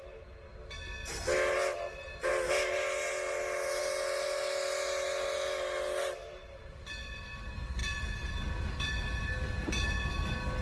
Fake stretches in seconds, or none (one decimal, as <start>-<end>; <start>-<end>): 7.8-8.8